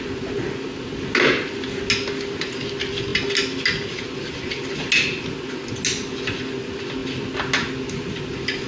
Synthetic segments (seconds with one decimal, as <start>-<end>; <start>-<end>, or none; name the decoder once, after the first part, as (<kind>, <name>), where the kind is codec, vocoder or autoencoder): none